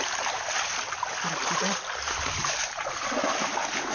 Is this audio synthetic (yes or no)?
no